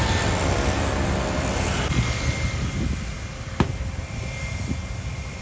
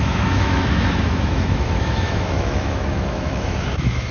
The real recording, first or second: first